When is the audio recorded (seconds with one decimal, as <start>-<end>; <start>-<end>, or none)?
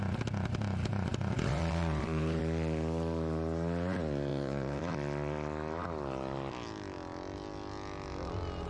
0.0-0.9; 2.4-4.3; 4.8-8.7